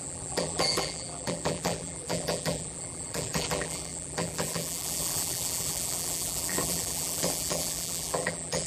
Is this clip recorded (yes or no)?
no